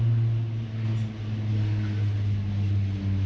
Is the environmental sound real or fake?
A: real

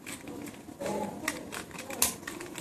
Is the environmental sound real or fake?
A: real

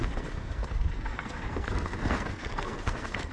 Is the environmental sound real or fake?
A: fake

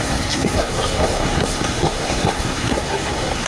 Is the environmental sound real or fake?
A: fake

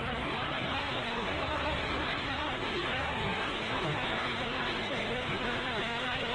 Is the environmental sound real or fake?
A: fake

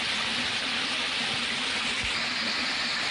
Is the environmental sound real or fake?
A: real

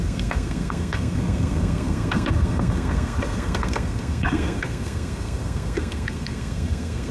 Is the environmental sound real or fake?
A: fake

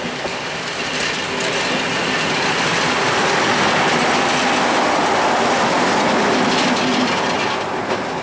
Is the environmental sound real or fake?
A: real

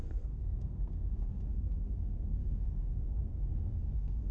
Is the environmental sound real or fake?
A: fake